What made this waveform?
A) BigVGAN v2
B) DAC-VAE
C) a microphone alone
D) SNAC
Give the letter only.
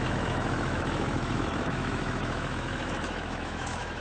B